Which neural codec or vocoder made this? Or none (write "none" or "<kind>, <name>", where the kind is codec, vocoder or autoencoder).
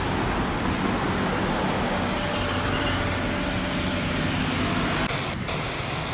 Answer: none